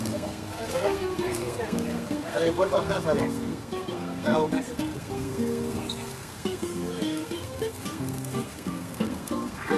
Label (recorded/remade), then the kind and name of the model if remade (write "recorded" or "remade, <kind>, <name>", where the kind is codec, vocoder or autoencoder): remade, codec, SNAC